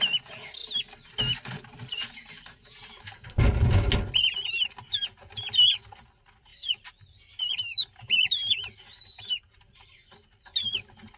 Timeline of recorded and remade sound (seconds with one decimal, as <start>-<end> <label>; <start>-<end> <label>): 0.0-11.2 recorded